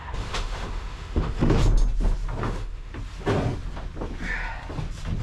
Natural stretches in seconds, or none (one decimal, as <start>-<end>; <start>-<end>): 1.6-2.4; 2.9-5.2